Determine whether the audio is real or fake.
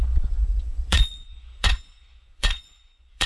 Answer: fake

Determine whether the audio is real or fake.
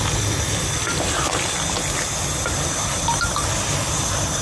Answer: real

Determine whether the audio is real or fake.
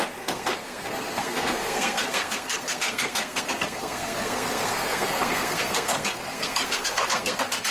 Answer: fake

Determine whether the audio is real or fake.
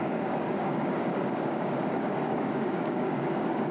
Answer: fake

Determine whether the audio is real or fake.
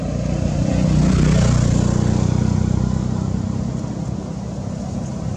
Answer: real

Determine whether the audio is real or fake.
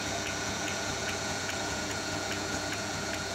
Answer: fake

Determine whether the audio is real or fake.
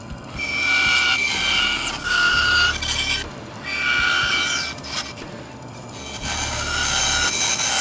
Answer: real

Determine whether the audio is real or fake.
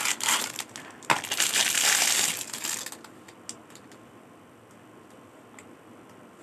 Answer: real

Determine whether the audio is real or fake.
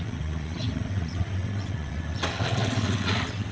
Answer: fake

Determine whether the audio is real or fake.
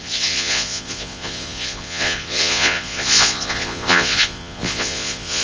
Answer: fake